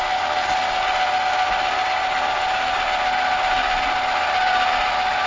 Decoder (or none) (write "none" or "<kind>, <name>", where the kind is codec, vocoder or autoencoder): none